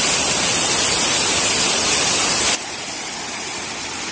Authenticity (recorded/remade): recorded